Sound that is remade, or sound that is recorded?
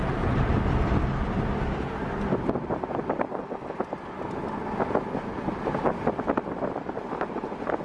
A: recorded